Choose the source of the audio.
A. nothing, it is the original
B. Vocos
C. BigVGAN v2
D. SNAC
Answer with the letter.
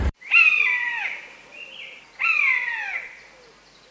C